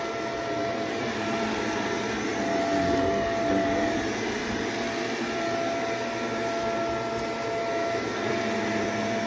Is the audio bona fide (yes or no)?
yes